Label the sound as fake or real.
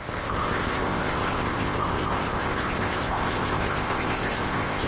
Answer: fake